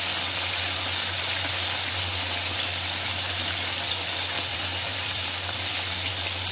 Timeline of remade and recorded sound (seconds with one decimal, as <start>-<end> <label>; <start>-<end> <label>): 0.0-4.5 recorded; 4.5-6.1 remade; 6.1-6.5 recorded

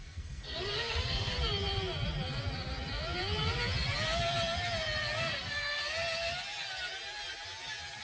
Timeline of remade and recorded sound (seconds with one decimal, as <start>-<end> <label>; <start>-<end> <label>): 0.0-1.3 remade; 1.3-5.2 recorded; 5.2-5.8 remade; 5.8-8.0 recorded

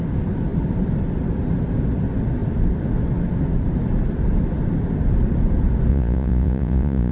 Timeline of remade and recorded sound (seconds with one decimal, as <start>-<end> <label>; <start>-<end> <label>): 0.0-5.9 recorded; 5.9-7.1 remade